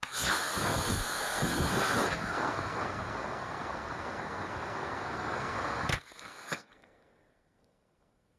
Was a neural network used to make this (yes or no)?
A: yes